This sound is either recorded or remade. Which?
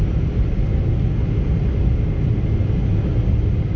recorded